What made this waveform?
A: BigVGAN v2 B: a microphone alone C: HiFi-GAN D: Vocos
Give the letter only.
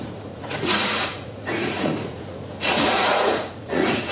D